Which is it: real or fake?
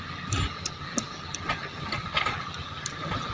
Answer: real